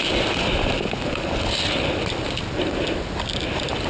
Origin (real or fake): real